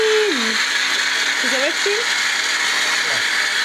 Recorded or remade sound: recorded